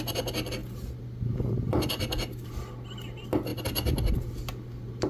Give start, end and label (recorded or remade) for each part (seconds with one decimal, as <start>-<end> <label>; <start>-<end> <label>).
0.0-5.1 recorded